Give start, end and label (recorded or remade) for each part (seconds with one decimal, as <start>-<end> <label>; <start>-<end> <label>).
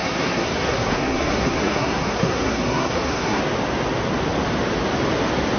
0.0-3.4 remade; 3.4-5.6 recorded